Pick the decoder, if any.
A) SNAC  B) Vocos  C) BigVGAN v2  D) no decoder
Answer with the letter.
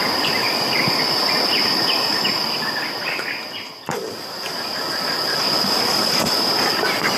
D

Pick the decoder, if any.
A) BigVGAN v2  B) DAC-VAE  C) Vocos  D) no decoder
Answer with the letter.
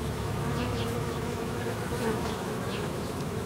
B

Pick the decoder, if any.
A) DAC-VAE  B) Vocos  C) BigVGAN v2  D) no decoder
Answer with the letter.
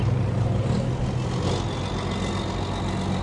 D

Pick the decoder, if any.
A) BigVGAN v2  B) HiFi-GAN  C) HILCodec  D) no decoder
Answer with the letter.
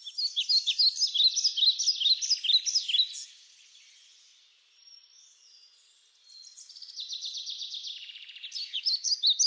D